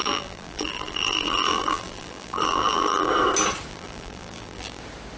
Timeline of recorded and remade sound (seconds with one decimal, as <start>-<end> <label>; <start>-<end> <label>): 0.0-3.1 remade; 3.1-3.7 recorded; 3.7-4.8 remade; 4.8-5.2 recorded